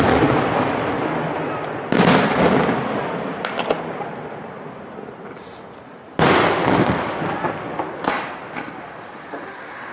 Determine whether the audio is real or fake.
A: real